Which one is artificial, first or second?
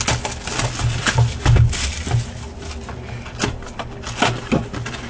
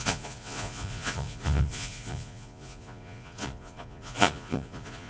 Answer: second